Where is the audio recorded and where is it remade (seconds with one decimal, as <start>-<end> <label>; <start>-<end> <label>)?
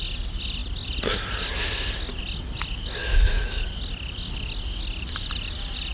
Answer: 0.0-3.0 recorded; 3.0-3.6 remade; 3.6-5.9 recorded